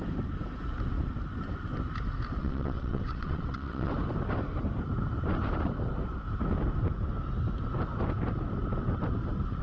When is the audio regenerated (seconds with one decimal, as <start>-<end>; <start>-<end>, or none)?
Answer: 2.4-3.9